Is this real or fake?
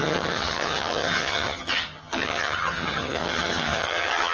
fake